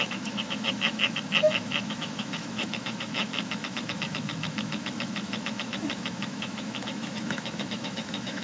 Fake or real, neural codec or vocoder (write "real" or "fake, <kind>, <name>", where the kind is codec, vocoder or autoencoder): fake, autoencoder, DAC-VAE